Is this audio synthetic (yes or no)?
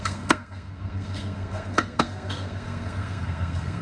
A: yes